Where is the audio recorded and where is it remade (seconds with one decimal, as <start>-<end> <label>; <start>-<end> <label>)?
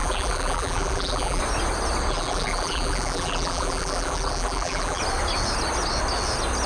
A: 0.0-1.4 remade; 1.4-2.1 recorded; 2.1-5.0 remade; 5.0-6.7 recorded